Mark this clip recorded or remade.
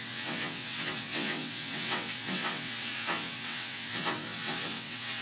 remade